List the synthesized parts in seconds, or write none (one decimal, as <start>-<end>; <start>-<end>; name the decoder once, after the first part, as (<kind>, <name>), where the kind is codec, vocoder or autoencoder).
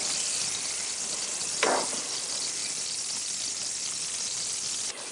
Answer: none